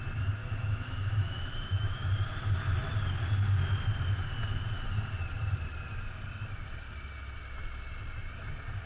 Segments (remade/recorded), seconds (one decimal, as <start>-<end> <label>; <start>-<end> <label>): 0.0-0.4 recorded; 0.4-2.1 remade; 2.1-8.9 recorded